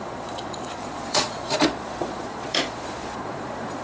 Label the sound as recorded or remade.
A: remade